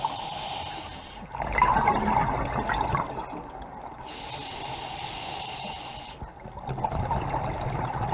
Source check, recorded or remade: recorded